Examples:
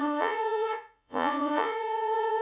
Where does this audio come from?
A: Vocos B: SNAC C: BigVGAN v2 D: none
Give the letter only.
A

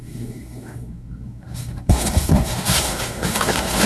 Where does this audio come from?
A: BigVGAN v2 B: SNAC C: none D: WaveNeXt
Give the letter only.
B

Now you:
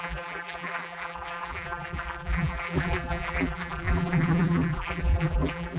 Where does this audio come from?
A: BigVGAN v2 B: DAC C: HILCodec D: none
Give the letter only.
A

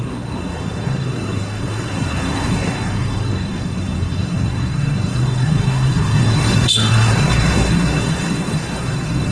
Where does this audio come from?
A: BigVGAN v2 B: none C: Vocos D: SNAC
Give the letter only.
D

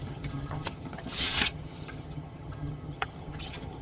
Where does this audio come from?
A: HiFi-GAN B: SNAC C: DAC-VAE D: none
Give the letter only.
A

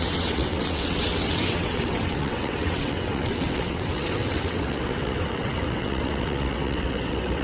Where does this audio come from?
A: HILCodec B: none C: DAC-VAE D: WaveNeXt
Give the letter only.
D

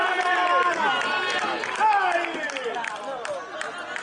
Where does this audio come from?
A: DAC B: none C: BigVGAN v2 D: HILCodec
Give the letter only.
B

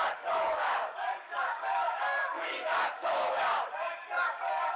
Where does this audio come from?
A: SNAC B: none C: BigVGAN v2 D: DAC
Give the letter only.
D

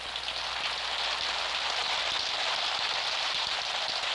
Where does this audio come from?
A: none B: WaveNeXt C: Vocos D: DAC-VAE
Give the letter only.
A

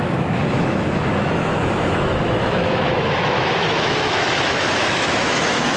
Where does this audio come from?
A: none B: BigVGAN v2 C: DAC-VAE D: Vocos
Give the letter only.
C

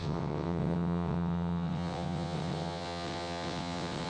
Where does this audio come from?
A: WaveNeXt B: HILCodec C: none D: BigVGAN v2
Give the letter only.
A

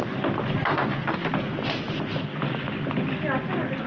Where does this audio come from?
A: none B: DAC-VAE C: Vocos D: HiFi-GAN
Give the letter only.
A